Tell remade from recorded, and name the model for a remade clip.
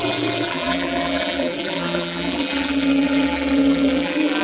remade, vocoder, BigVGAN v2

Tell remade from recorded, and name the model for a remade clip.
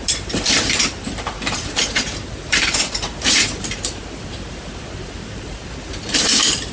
remade, vocoder, BigVGAN v2